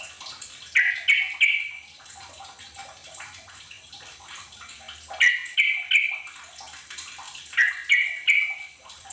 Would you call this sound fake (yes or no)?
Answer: no